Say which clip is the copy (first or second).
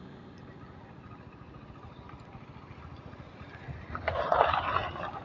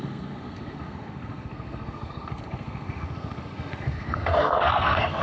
second